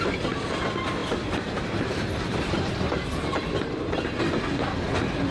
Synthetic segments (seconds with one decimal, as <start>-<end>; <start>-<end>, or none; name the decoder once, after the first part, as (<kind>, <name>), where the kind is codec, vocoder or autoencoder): 1.0-4.2 (vocoder, BigVGAN v2)